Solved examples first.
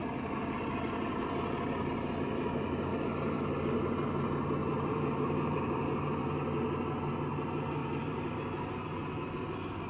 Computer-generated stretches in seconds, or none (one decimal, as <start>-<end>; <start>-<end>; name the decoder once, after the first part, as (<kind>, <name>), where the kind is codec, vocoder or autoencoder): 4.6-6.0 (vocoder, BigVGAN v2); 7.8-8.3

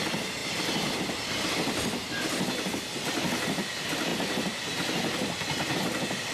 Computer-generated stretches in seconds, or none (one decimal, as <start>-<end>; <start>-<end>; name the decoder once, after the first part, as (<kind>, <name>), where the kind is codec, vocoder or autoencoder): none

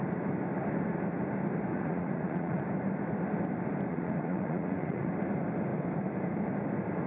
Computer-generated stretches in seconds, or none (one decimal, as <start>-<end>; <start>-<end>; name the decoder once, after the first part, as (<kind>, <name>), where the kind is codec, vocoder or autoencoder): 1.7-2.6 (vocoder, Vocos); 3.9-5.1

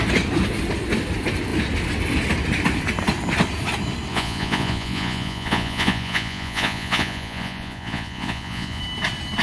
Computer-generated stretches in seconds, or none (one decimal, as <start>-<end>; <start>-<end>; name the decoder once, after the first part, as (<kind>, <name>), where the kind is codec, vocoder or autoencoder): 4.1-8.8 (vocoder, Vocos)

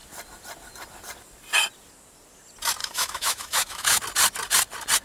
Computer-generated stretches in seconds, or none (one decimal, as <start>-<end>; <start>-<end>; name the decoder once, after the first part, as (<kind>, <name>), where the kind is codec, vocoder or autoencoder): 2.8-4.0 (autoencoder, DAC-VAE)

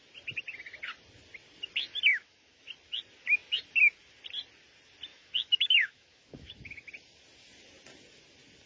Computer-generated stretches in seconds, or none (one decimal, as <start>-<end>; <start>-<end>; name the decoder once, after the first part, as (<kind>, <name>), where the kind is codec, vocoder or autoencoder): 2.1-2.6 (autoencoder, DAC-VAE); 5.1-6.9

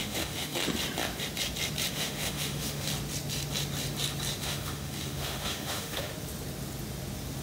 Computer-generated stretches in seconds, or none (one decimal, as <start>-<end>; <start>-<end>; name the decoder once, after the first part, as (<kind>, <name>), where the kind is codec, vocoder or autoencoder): 0.0-0.6 (autoencoder, DAC-VAE); 1.9-2.9; 4.4-6.1

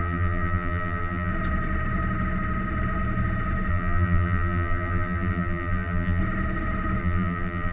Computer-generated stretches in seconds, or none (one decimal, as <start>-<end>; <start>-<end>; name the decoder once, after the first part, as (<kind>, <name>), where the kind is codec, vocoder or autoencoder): 0.0-1.3 (vocoder, BigVGAN v2); 3.7-6.2; 7.0-7.7